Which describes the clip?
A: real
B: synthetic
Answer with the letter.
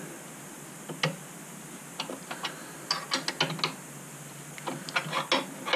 A